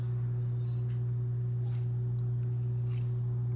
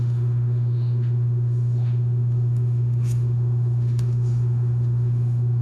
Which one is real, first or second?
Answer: first